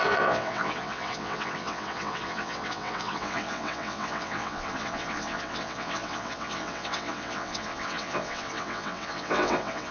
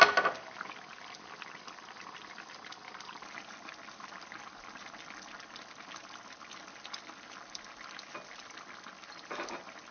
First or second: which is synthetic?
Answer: first